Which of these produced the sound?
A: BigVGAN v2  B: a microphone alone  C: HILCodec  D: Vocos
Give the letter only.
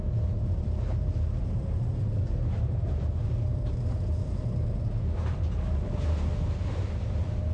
A